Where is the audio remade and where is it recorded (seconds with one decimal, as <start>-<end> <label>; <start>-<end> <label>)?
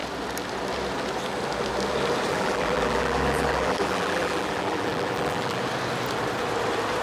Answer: 0.0-2.3 recorded; 2.3-5.6 remade; 5.6-7.0 recorded